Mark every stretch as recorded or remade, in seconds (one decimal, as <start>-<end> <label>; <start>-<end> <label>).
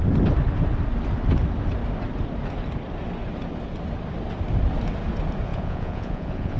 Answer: 0.0-5.5 recorded; 5.5-6.6 remade